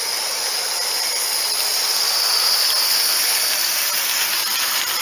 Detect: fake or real real